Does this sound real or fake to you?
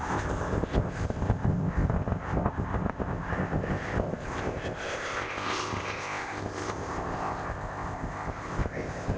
fake